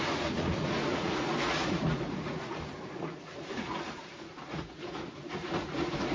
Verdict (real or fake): fake